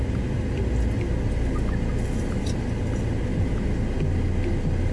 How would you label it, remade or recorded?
recorded